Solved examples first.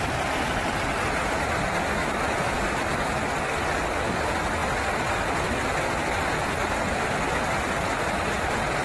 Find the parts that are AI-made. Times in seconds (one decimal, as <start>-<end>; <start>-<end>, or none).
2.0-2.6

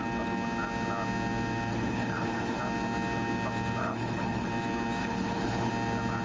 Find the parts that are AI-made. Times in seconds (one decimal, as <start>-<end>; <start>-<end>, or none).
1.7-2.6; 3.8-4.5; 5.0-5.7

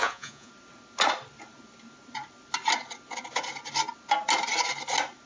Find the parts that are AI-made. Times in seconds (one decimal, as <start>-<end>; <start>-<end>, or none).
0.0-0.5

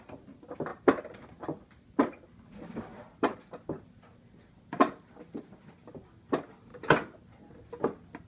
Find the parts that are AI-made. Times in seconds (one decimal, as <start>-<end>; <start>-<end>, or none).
none